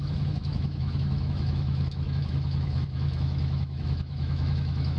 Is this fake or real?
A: fake